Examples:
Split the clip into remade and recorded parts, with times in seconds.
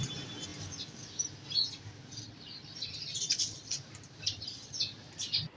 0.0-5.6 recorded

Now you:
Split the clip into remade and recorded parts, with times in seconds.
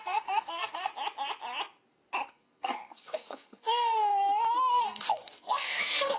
0.0-0.9 remade; 0.9-2.3 recorded; 2.3-4.1 remade; 4.1-4.7 recorded; 4.7-6.2 remade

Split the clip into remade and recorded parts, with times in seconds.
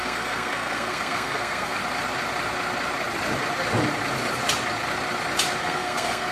0.0-1.8 remade; 1.8-5.6 recorded; 5.6-6.3 remade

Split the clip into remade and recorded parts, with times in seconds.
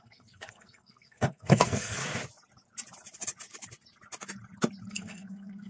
0.0-2.0 remade; 2.0-4.9 recorded; 4.9-5.7 remade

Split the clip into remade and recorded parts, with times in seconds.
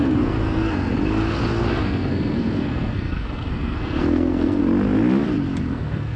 0.0-0.9 remade; 0.9-1.7 recorded; 1.7-4.6 remade; 4.6-5.6 recorded; 5.6-6.2 remade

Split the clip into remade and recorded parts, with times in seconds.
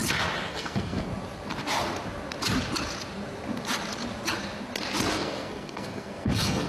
0.0-0.5 recorded; 0.5-1.1 remade; 1.1-5.1 recorded; 5.1-6.7 remade